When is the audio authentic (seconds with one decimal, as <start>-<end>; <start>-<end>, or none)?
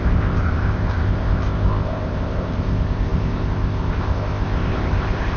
none